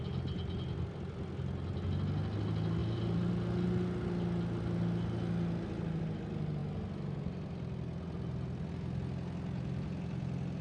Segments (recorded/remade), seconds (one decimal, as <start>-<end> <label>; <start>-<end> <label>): 0.0-2.8 recorded; 2.8-3.3 remade; 3.3-10.6 recorded